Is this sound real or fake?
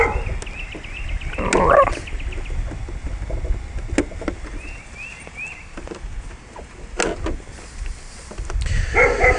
real